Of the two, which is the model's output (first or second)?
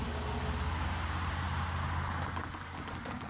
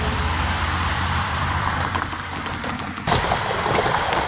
second